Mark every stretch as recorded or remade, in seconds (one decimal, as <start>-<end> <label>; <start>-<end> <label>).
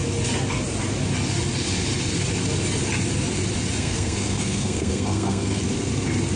0.0-3.8 recorded; 3.8-5.6 remade; 5.6-6.4 recorded